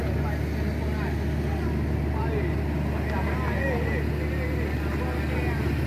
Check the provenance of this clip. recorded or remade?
recorded